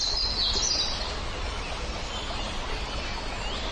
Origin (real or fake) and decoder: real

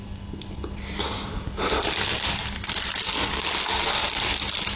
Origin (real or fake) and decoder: real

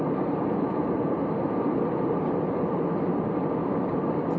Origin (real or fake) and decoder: real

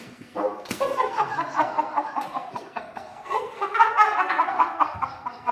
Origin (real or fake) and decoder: fake, codec, SNAC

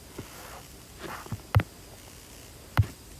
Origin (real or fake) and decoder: real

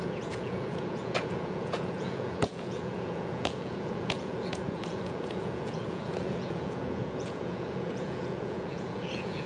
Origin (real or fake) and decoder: fake, vocoder, Vocos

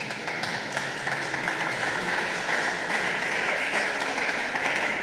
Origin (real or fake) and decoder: fake, autoencoder, DAC-VAE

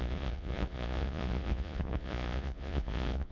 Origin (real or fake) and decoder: fake, vocoder, Vocos